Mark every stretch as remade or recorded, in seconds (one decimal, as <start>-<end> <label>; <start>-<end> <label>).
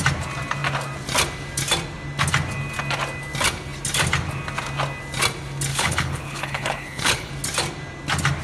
0.0-5.7 recorded; 5.7-7.3 remade; 7.3-8.4 recorded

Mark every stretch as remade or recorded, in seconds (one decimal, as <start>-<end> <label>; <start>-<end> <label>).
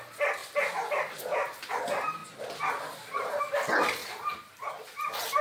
0.0-0.4 recorded; 0.4-1.7 remade; 1.7-4.0 recorded; 4.0-4.7 remade; 4.7-5.4 recorded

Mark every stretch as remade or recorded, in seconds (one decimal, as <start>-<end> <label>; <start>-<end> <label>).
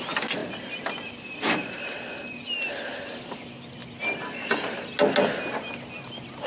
0.0-6.5 recorded